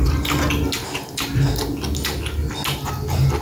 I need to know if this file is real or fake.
real